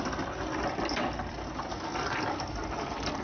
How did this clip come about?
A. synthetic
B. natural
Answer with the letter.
B